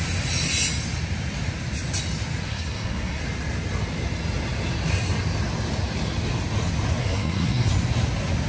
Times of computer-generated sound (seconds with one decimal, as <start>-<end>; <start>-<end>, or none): 2.5-3.2; 7.0-7.7